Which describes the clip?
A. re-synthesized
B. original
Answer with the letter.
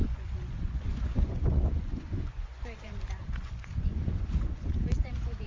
A